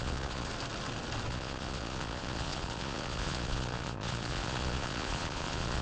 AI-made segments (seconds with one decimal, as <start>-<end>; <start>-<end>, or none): 0.0-0.5; 1.3-5.8